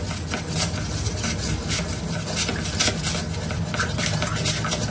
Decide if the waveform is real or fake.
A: real